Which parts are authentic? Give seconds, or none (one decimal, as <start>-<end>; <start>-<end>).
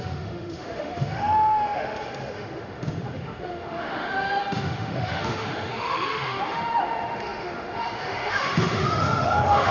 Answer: none